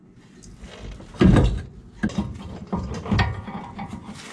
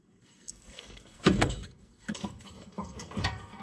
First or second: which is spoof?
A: second